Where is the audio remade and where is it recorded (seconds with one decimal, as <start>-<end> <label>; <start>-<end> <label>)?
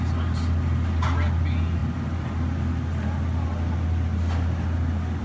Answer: 0.0-5.2 recorded